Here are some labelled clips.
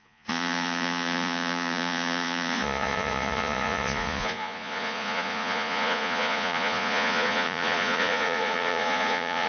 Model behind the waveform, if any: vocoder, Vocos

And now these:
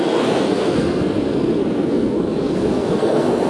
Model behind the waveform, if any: codec, SNAC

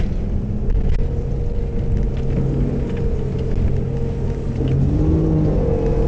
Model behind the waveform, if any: none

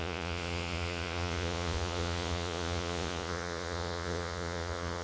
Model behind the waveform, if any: vocoder, Vocos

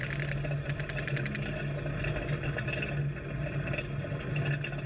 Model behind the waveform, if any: none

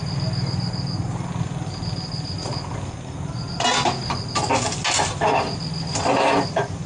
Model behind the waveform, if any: none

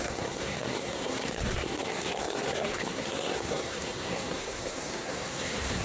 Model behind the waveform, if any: codec, SNAC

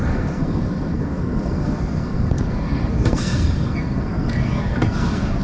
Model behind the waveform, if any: codec, SNAC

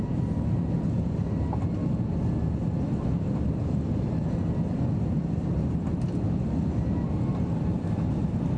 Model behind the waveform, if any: none